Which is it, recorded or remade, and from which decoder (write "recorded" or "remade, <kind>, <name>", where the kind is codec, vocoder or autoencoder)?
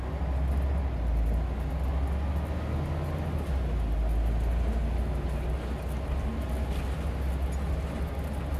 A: recorded